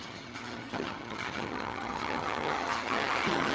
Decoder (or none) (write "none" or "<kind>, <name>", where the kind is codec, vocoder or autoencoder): vocoder, HiFi-GAN